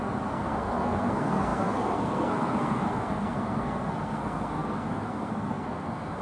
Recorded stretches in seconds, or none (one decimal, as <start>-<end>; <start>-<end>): none